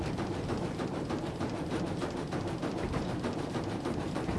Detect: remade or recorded remade